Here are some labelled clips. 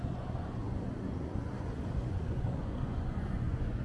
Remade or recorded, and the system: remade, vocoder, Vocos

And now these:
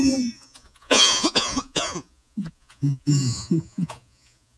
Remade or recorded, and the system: remade, vocoder, Vocos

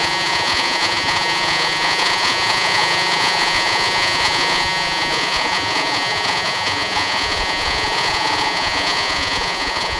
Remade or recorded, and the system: remade, vocoder, Vocos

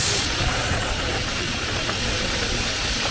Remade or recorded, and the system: remade, vocoder, Vocos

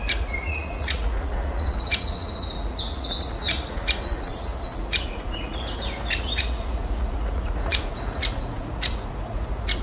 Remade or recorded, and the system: remade, vocoder, Vocos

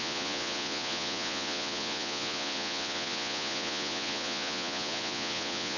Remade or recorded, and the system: remade, vocoder, Vocos